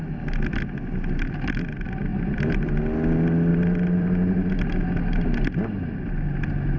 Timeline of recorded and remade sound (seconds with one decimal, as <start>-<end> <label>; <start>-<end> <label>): 0.0-2.1 recorded; 2.1-2.8 remade; 2.8-3.5 recorded; 3.5-4.5 remade; 4.5-6.8 recorded